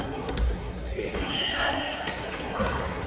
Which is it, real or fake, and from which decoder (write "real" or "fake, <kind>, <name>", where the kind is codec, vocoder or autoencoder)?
fake, codec, SNAC